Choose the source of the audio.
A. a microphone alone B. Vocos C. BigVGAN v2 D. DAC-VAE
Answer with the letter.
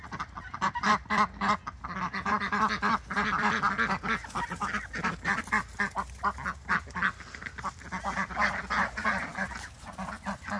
A